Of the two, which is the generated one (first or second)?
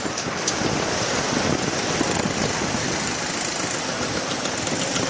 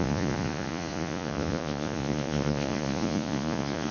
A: second